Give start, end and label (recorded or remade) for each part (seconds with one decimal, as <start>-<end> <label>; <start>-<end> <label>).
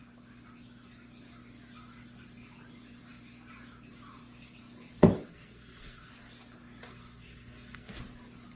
0.0-5.3 recorded; 5.3-6.1 remade; 6.1-6.9 recorded; 6.9-8.0 remade; 8.0-8.6 recorded